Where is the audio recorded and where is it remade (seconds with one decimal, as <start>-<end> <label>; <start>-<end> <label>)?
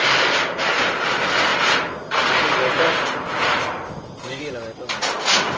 0.0-5.6 recorded